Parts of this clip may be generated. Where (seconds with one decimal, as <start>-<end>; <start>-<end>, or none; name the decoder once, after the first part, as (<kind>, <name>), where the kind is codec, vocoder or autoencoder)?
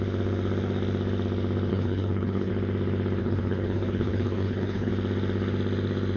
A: 1.7-2.5 (codec, HILCodec); 3.2-4.9